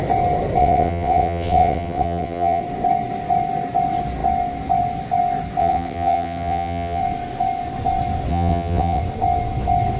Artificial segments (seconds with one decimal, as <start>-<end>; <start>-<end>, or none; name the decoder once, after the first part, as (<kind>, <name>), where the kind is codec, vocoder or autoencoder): 0.6-2.6 (vocoder, WaveNeXt); 5.6-7.0; 8.3-9.0